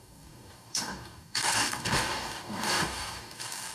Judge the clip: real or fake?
fake